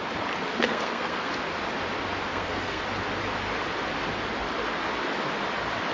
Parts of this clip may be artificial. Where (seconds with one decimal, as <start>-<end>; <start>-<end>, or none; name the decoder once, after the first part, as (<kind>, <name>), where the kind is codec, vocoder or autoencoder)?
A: 0.5-1.3 (codec, SNAC); 2.3-2.8